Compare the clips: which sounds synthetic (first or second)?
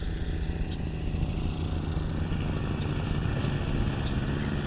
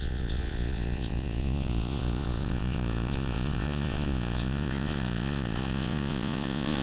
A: second